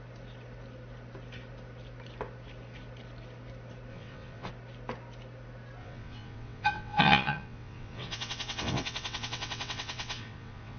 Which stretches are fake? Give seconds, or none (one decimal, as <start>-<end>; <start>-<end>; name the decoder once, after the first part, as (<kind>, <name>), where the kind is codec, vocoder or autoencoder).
3.9-4.5 (vocoder, WaveNeXt); 5.8-10.8